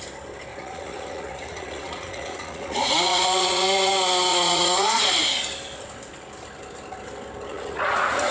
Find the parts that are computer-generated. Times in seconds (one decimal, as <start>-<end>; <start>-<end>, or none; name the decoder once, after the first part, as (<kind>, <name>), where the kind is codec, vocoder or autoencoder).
0.5-3.9 (vocoder, Vocos); 4.3-5.0; 7.5-8.3